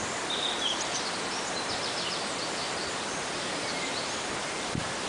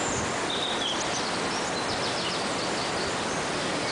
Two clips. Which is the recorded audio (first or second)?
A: second